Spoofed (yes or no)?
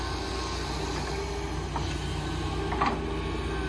no